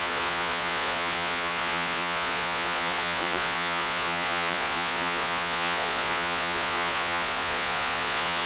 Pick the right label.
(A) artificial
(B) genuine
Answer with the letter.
A